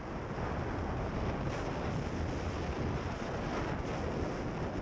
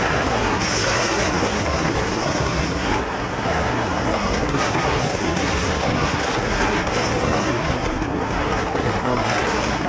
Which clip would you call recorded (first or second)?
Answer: first